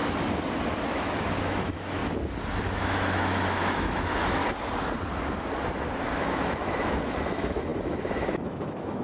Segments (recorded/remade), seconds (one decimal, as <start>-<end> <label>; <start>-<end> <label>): 0.0-0.9 recorded; 0.9-2.0 remade; 2.0-2.8 recorded; 2.8-4.4 remade; 4.4-6.2 recorded; 6.2-9.0 remade